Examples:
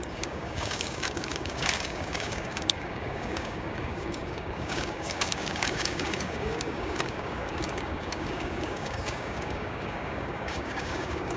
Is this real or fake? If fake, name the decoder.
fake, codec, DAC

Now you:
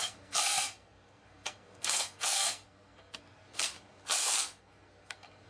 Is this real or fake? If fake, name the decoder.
fake, codec, SNAC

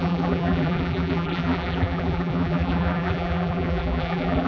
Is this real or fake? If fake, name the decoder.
fake, vocoder, BigVGAN v2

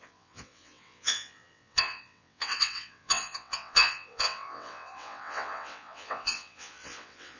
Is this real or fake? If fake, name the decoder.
fake, vocoder, WaveNeXt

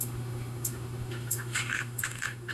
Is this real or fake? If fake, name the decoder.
fake, autoencoder, DAC-VAE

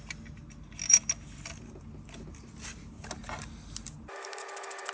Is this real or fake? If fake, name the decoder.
real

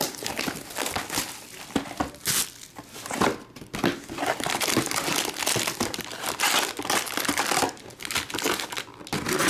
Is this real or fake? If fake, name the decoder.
real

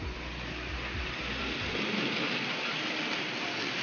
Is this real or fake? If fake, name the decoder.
real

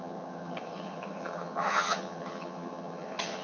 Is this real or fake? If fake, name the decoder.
fake, vocoder, HiFi-GAN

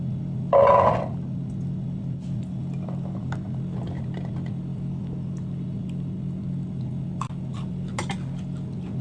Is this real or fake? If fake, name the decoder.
real